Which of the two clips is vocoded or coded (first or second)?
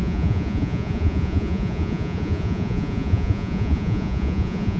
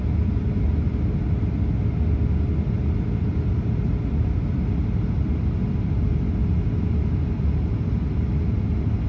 first